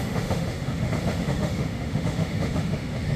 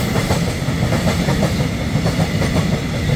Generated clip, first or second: first